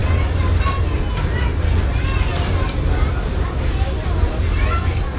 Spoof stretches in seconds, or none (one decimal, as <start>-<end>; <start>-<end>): none